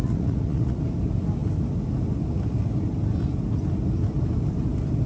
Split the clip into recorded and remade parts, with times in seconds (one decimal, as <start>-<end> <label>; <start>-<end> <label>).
0.0-0.8 remade; 0.8-5.1 recorded